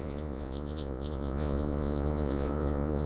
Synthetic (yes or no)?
yes